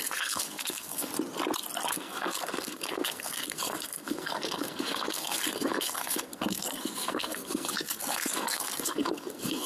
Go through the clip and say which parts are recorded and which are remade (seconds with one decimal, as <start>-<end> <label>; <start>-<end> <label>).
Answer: 0.0-1.1 remade; 1.1-1.9 recorded; 1.9-9.7 remade